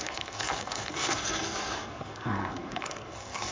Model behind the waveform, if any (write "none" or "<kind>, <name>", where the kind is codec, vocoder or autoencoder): codec, SNAC